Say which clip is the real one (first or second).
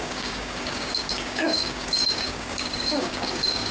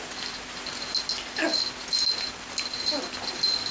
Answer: second